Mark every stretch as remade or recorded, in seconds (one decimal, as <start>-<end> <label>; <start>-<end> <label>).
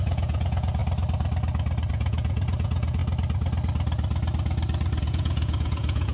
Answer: 0.0-0.8 remade; 0.8-1.9 recorded; 1.9-3.0 remade; 3.0-5.0 recorded; 5.0-6.1 remade